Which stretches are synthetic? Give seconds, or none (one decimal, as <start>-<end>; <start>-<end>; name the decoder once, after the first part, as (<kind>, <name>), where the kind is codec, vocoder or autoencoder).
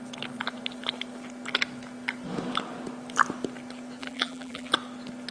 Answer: 4.0-4.7 (vocoder, BigVGAN v2)